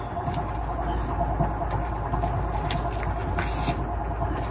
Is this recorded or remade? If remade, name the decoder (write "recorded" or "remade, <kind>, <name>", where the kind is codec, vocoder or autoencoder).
recorded